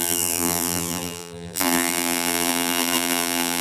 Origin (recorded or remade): remade